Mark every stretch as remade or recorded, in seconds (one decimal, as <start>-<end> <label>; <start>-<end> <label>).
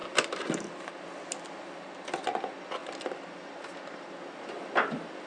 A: 0.0-5.3 recorded